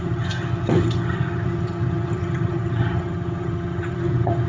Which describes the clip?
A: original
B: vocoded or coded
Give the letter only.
B